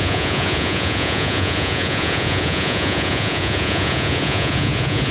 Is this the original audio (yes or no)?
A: no